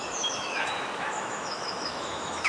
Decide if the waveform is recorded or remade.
remade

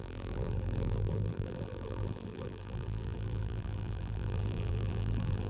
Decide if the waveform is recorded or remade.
remade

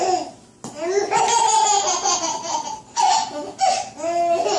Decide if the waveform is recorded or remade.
recorded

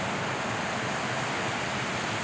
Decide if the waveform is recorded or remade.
recorded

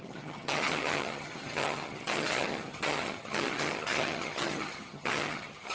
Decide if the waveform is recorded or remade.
remade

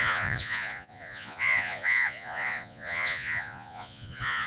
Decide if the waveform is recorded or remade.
remade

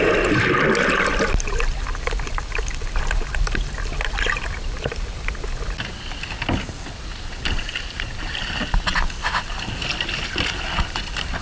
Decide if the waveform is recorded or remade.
recorded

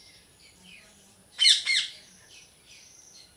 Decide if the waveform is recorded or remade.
remade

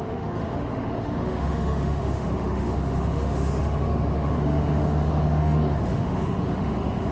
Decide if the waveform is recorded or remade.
remade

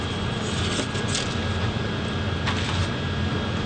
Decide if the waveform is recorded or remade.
recorded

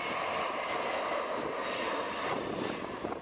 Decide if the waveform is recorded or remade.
recorded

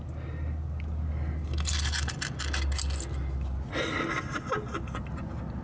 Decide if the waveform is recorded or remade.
recorded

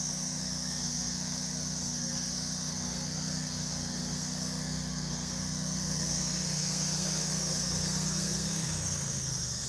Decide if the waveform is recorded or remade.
remade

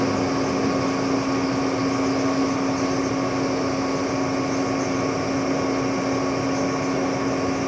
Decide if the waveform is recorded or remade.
recorded